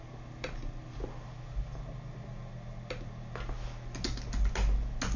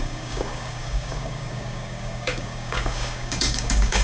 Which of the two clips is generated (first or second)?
second